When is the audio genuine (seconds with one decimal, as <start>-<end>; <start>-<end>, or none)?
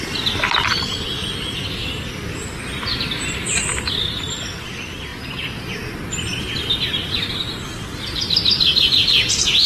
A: 3.7-4.6; 5.1-6.4